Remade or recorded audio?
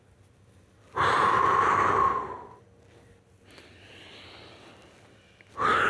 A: recorded